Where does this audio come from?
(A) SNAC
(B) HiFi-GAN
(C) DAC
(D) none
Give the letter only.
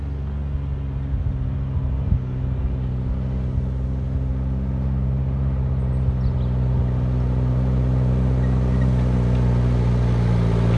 D